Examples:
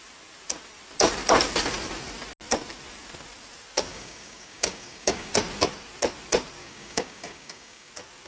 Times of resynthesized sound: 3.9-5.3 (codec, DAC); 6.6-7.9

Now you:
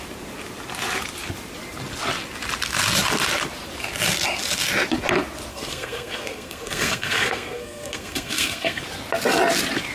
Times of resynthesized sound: 5.5-8.8 (codec, SNAC)

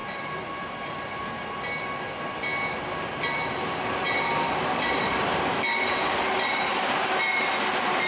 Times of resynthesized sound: 0.0-1.6 (vocoder, BigVGAN v2)

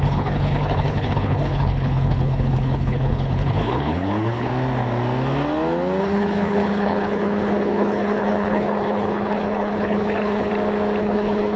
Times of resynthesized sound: 0.0-4.5 (codec, HILCodec); 6.0-10.5; 11.0-11.6